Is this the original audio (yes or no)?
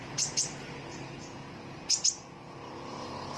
yes